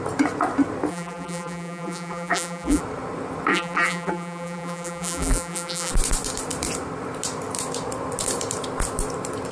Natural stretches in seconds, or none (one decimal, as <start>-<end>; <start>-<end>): 0.0-0.9; 2.8-3.5; 5.9-9.5